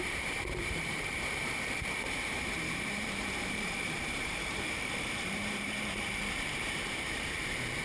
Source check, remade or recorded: remade